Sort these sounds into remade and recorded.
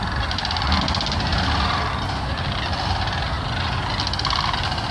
recorded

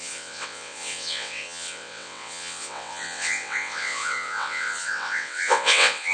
remade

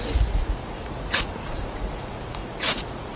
remade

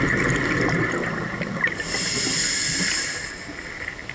recorded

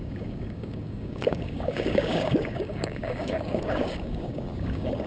remade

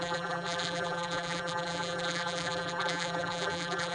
remade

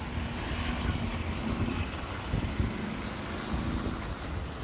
recorded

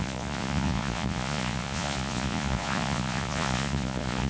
remade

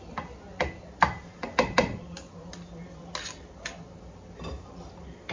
recorded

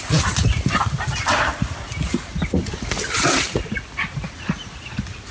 recorded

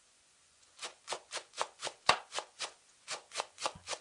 remade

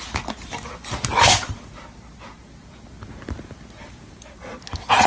recorded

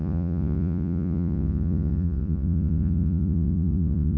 remade